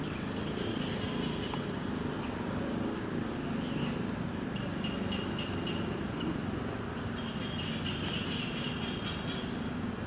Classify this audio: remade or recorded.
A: recorded